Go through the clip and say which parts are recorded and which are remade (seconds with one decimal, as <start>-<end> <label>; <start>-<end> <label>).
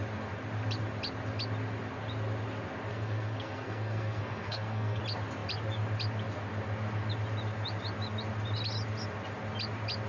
0.0-2.9 recorded; 2.9-5.0 remade; 5.0-10.1 recorded